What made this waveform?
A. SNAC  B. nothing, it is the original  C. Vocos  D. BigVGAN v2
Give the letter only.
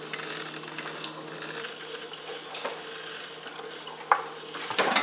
B